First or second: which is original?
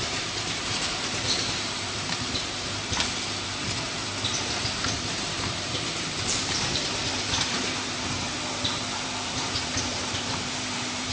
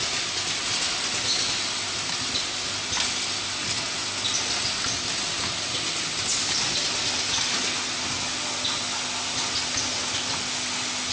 second